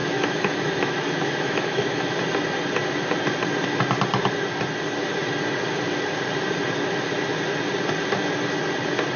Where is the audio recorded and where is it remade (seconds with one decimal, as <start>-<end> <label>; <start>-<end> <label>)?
0.0-2.1 remade; 2.1-9.2 recorded